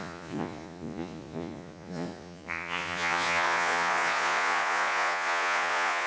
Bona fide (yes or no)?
no